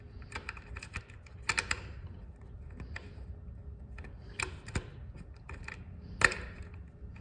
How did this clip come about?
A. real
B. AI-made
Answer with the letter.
A